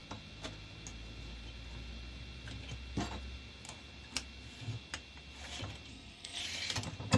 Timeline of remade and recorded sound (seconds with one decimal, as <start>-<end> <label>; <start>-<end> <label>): 0.0-5.9 recorded; 5.9-6.4 remade; 6.4-7.2 recorded